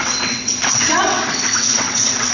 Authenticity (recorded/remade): remade